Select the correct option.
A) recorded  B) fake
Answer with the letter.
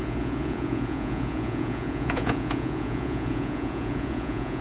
B